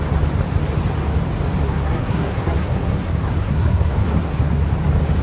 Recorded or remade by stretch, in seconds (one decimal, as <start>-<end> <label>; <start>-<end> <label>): 0.0-1.6 recorded; 1.6-4.7 remade; 4.7-5.2 recorded